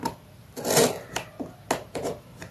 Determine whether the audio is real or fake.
real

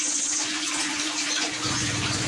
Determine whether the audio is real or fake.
fake